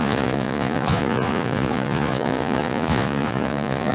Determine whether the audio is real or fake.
fake